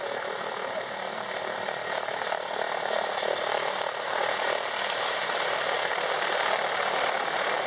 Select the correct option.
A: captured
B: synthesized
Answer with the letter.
A